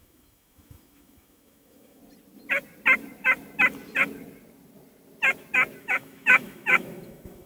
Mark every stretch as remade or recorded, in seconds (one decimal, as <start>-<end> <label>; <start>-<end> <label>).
0.0-2.0 remade; 2.0-5.8 recorded; 5.8-7.5 remade